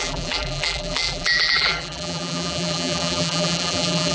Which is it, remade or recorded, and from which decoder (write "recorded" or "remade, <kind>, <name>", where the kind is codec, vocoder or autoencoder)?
remade, vocoder, BigVGAN v2